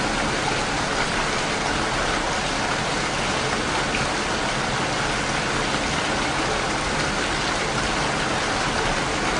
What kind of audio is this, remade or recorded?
recorded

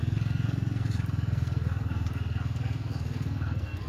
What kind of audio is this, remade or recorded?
remade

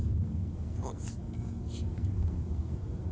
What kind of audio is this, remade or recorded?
remade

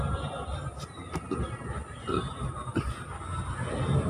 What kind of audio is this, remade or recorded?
recorded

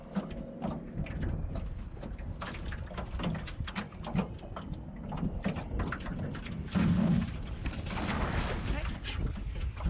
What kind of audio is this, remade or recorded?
recorded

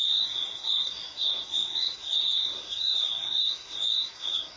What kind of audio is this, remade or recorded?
remade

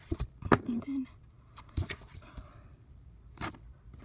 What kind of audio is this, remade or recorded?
recorded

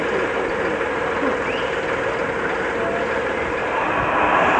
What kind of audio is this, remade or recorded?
recorded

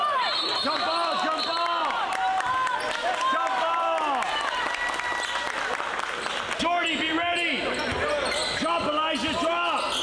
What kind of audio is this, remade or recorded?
recorded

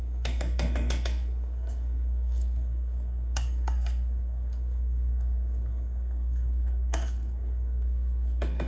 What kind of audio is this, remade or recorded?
remade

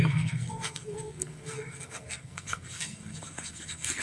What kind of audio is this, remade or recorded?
remade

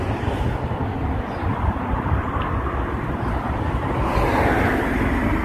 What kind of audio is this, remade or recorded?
recorded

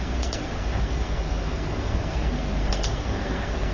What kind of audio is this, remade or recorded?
remade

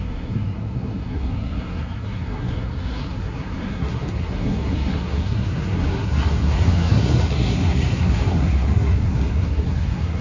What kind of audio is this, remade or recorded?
remade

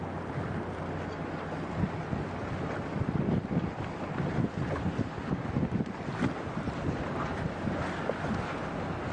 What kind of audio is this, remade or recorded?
recorded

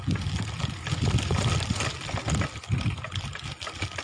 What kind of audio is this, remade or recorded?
recorded